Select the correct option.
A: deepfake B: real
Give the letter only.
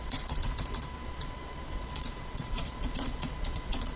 A